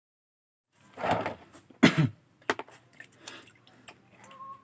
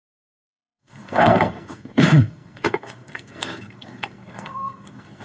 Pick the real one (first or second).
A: first